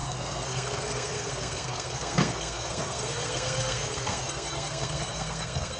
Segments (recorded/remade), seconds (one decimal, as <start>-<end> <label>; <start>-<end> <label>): 0.0-5.8 remade

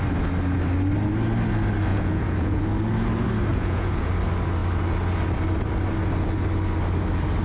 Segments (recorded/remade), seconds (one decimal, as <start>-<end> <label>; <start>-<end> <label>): 0.0-1.9 recorded; 1.9-2.6 remade; 2.6-3.5 recorded; 3.5-4.1 remade; 4.1-7.4 recorded

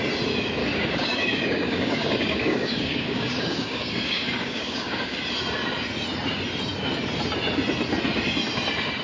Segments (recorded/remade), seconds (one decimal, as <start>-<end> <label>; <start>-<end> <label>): 0.0-0.6 recorded; 0.6-5.2 remade; 5.2-9.0 recorded

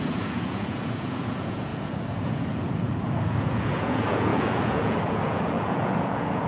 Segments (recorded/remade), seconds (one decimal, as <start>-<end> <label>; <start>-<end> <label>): 0.0-6.5 remade

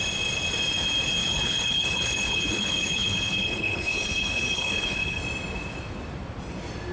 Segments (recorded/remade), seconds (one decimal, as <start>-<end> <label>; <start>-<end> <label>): 0.0-1.2 recorded; 1.2-5.2 remade; 5.2-6.9 recorded